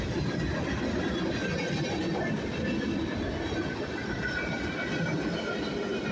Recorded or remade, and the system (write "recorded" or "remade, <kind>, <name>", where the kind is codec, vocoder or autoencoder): recorded